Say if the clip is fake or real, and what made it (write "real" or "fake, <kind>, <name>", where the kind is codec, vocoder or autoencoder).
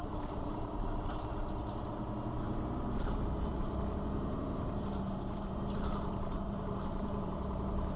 fake, vocoder, BigVGAN v2